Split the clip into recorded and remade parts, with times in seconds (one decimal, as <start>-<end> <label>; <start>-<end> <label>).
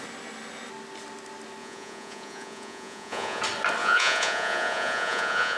0.0-1.6 recorded; 1.6-3.4 remade; 3.4-3.8 recorded; 3.8-5.6 remade